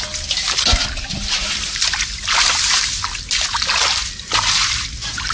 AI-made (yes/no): no